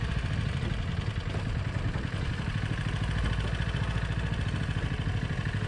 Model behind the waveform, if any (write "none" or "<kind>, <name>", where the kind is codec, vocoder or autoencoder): none